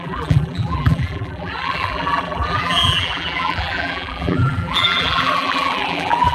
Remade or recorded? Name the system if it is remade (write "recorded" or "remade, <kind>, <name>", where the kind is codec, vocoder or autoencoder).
remade, vocoder, BigVGAN v2